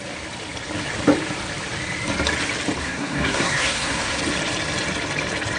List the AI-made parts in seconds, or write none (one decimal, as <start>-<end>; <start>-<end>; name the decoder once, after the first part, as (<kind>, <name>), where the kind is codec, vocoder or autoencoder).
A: 2.8-4.2 (codec, SNAC)